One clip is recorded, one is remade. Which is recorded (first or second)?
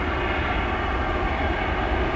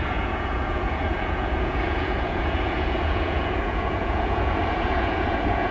first